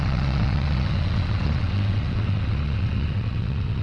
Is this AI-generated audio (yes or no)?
yes